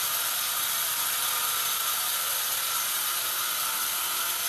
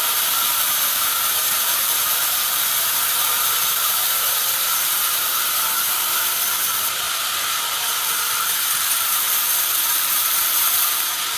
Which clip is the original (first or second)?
first